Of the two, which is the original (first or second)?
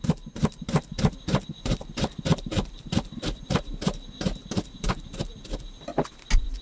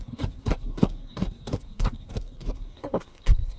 first